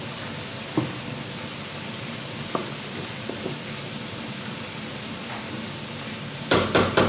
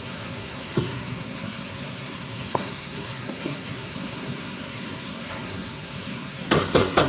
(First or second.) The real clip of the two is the first